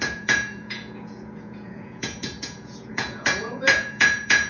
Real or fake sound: fake